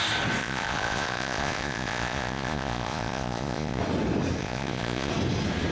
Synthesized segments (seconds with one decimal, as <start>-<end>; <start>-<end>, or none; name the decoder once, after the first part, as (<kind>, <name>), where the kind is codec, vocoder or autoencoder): 0.4-3.8 (vocoder, Vocos); 4.4-5.1